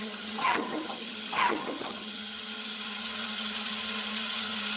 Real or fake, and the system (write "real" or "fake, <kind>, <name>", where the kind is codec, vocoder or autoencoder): fake, vocoder, HiFi-GAN